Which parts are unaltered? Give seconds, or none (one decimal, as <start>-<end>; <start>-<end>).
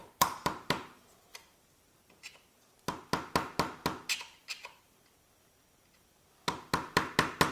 2.6-4.4; 5.0-7.5